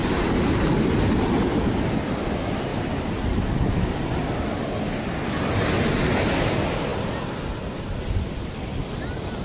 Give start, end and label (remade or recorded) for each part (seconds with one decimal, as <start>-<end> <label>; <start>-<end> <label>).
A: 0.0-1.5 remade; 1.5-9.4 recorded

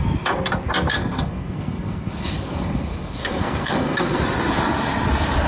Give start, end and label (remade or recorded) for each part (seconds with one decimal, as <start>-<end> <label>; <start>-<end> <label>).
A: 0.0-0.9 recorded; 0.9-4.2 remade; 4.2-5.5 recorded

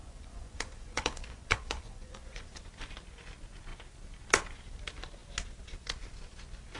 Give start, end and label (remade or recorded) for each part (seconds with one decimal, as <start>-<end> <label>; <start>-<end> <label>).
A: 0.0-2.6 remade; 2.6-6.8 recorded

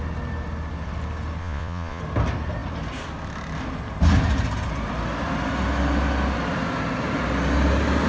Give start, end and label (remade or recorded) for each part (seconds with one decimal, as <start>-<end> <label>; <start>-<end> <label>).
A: 0.0-1.4 recorded; 1.4-2.0 remade; 2.0-8.1 recorded

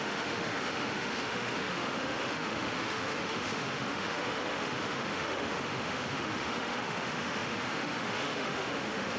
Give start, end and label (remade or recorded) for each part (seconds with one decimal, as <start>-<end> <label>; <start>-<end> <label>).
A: 0.0-9.2 remade

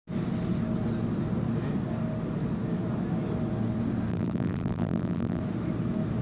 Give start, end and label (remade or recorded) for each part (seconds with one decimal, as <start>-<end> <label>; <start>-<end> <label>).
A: 0.0-4.1 recorded; 4.1-5.4 remade; 5.4-6.2 recorded